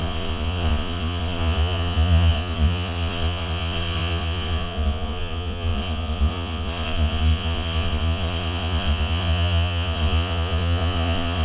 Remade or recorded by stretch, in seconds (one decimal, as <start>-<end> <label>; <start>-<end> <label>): 0.0-11.4 remade